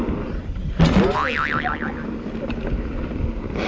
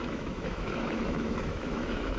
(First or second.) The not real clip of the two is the second